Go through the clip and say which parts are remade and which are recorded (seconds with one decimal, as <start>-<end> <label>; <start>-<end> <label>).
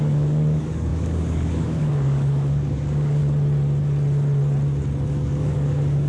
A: 0.0-3.2 remade; 3.2-5.0 recorded; 5.0-6.1 remade